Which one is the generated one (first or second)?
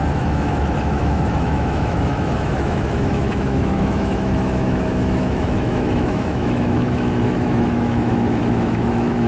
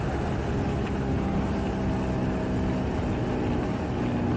first